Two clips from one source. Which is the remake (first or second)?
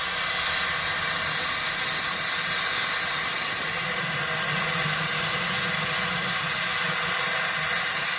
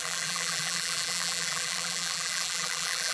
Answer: second